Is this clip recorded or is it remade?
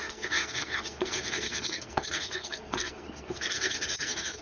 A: remade